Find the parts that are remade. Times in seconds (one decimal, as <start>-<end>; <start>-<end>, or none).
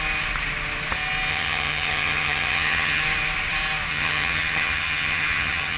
1.3-3.0; 3.9-5.8